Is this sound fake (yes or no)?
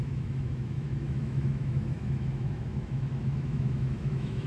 yes